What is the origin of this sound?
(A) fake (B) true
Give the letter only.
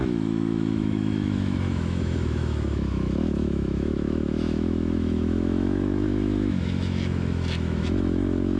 A